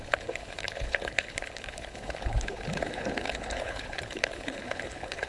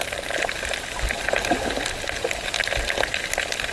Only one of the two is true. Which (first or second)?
second